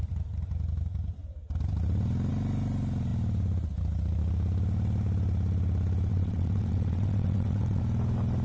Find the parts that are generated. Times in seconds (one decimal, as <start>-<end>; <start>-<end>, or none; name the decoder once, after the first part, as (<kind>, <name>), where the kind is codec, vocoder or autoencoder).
6.1-7.8 (vocoder, WaveNeXt)